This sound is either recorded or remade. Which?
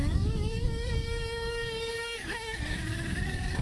remade